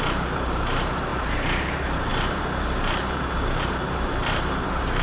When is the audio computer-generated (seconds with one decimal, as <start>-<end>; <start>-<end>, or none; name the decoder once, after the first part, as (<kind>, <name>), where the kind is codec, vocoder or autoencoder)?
0.0-5.0 (vocoder, BigVGAN v2)